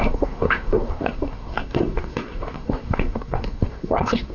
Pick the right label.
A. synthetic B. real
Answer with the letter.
A